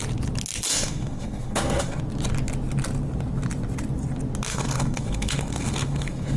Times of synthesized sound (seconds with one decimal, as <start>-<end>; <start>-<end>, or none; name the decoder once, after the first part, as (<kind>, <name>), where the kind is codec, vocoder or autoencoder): 0.7-2.0 (codec, SNAC); 4.5-6.4